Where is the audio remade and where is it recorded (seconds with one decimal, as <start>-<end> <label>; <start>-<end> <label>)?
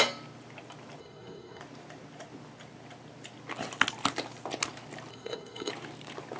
0.0-1.0 recorded; 1.0-1.6 remade; 1.6-5.1 recorded; 5.1-5.7 remade; 5.7-6.4 recorded